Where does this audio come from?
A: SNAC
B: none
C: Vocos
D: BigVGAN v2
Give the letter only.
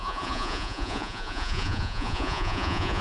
C